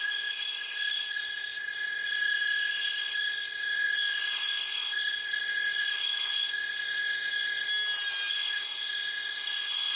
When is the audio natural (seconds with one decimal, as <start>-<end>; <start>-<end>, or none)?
7.7-8.3